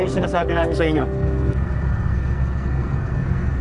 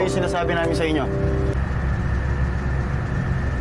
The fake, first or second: first